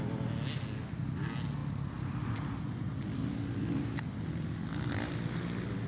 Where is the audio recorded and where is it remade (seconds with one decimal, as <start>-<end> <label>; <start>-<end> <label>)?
0.0-5.9 recorded